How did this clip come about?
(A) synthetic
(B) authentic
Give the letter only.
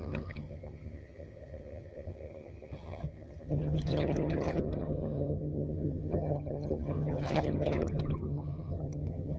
A